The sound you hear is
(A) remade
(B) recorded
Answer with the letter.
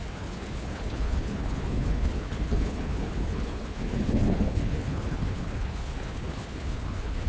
A